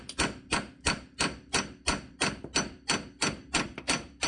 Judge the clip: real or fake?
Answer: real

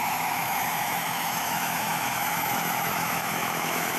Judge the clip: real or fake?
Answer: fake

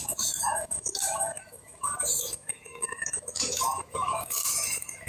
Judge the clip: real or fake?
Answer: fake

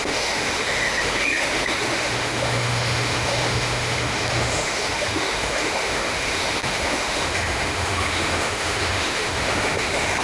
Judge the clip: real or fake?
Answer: fake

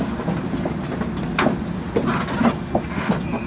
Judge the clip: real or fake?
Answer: real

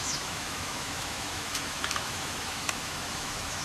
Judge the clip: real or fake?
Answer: fake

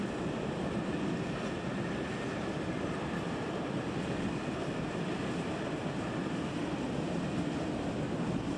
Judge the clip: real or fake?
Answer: real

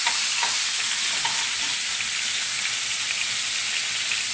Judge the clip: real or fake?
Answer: real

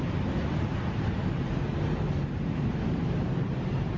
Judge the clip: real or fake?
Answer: real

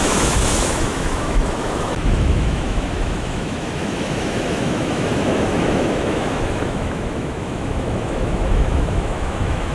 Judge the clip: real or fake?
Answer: fake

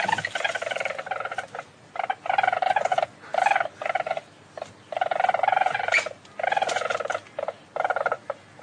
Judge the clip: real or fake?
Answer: real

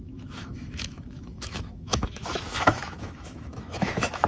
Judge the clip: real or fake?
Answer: fake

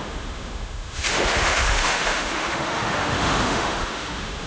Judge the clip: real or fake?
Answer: fake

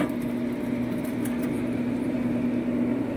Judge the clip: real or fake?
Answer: real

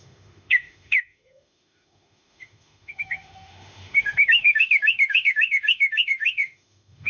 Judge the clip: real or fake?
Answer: fake